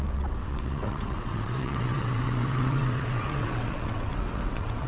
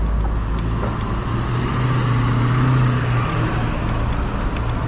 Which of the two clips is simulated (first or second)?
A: first